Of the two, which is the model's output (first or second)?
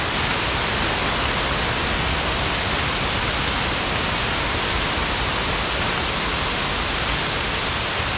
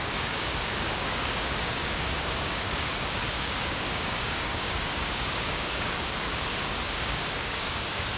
second